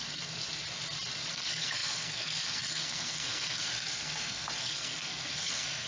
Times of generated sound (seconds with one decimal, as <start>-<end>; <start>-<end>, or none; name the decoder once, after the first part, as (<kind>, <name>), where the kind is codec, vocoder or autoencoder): 0.0-0.4 (codec, SNAC); 1.3-5.9